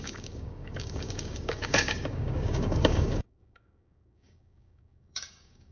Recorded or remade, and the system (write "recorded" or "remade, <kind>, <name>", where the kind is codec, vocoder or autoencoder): remade, codec, DAC